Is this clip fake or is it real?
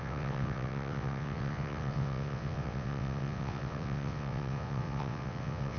fake